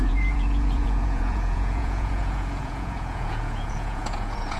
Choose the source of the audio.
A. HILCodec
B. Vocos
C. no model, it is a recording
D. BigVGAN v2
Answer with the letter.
B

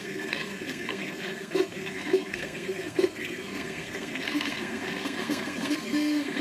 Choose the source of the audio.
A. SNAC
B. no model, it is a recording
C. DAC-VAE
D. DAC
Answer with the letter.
A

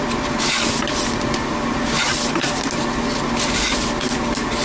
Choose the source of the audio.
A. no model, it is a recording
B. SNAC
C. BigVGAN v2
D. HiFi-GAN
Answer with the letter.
A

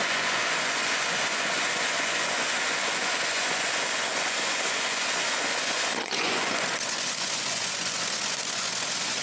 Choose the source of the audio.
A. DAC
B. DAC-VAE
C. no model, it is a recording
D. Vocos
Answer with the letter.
D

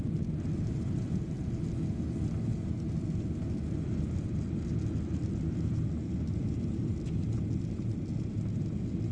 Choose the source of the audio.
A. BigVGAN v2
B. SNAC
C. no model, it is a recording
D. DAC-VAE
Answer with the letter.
C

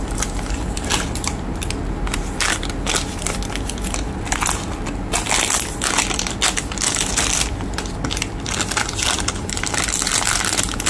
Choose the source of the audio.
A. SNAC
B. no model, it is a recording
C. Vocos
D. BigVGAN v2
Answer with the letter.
B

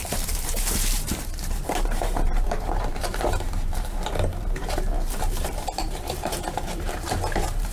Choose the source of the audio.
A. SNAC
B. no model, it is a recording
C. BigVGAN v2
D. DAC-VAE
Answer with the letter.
C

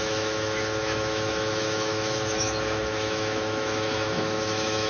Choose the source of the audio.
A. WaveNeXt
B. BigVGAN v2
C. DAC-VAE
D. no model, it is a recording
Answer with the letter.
C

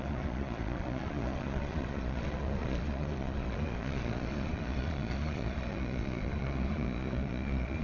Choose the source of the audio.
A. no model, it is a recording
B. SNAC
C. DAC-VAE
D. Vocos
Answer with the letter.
D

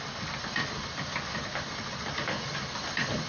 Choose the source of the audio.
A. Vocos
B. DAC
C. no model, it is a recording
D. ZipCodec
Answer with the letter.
C